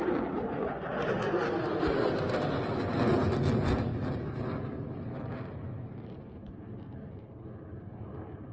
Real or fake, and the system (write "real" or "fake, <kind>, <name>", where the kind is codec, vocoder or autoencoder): real